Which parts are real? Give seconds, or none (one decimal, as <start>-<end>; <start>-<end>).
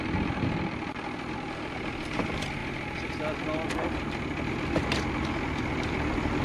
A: 0.0-6.4